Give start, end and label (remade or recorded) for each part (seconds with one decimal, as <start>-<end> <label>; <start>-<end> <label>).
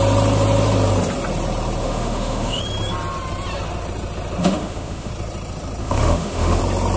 0.0-1.8 recorded; 1.8-2.6 remade; 2.6-4.4 recorded; 4.4-5.1 remade; 5.1-5.8 recorded; 5.8-6.6 remade; 6.6-7.0 recorded